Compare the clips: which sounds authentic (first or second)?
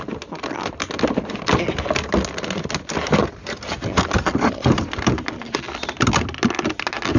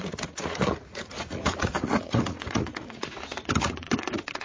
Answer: first